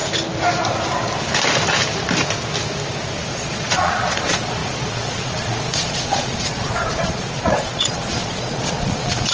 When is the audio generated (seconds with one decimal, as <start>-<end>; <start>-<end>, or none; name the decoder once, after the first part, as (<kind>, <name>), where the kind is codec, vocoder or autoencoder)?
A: 3.3-9.3 (vocoder, Vocos)